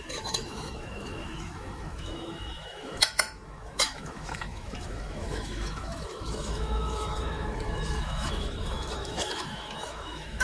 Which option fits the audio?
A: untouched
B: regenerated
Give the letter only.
B